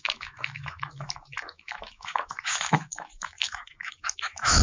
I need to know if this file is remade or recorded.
remade